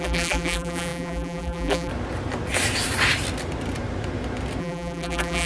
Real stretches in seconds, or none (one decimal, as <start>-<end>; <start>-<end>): 1.9-4.6